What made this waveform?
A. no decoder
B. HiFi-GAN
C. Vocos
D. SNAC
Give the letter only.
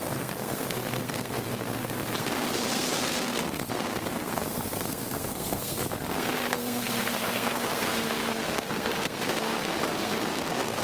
D